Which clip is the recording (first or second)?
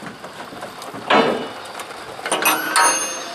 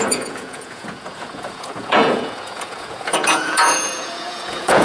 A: first